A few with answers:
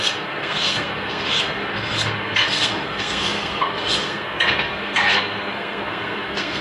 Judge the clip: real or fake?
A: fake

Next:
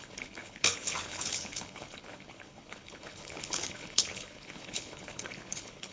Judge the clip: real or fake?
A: fake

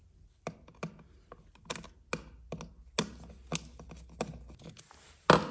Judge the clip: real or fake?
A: real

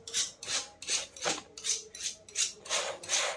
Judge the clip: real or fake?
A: real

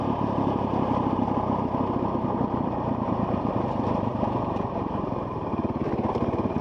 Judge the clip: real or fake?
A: fake